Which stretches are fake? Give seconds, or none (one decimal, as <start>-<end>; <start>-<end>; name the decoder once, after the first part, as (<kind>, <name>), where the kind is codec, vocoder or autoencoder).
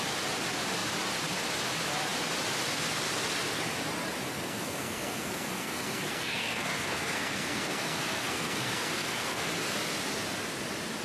4.3-9.5 (codec, SNAC)